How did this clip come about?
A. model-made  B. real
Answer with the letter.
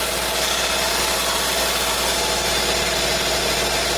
B